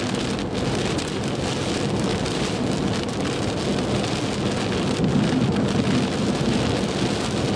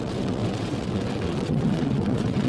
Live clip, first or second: first